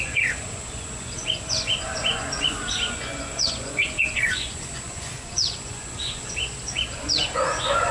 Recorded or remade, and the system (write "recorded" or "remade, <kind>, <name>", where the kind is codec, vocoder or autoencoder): remade, vocoder, Vocos